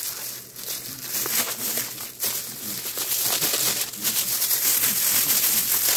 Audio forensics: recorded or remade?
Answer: recorded